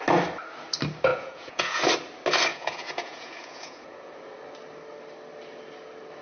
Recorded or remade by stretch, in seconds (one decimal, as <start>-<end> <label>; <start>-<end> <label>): 0.0-1.1 recorded; 1.1-1.8 remade; 1.8-2.5 recorded; 2.5-4.1 remade; 4.1-6.2 recorded